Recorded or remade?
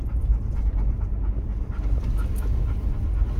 recorded